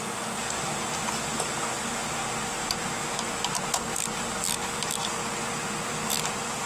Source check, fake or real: real